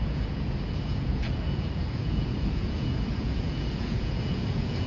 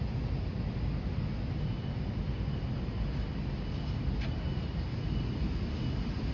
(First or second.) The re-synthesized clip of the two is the first